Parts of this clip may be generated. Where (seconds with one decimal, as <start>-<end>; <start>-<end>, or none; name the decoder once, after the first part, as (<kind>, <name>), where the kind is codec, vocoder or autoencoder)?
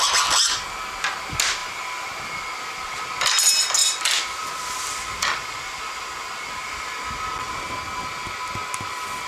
1.6-2.1 (vocoder, BigVGAN v2); 3.8-5.8